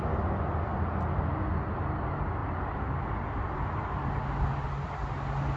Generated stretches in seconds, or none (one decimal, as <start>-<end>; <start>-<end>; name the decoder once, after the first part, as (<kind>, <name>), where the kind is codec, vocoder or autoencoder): none